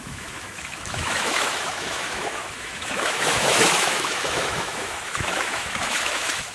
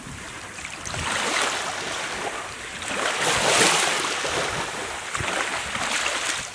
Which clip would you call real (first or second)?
second